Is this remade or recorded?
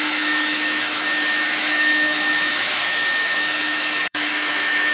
remade